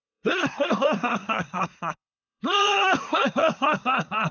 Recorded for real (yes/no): no